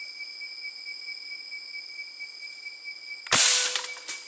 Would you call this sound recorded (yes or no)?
yes